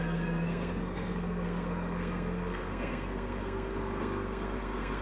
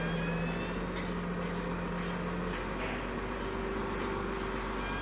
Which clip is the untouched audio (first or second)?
second